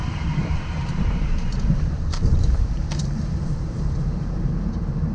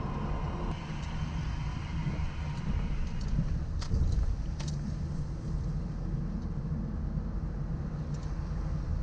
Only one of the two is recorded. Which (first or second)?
second